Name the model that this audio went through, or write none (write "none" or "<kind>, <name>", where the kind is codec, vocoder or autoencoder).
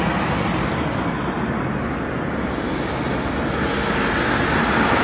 none